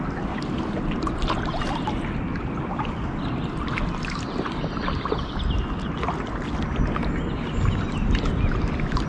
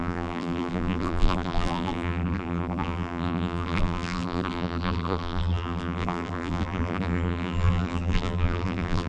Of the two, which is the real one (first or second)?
first